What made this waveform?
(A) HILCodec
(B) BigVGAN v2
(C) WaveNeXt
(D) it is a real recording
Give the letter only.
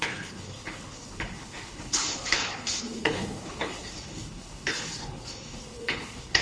A